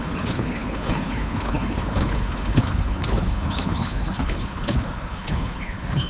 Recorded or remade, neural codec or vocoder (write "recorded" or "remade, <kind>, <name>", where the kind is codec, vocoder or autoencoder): remade, codec, HILCodec